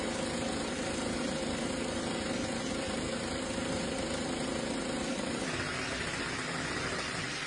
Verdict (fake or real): real